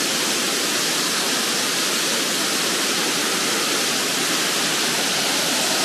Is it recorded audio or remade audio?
recorded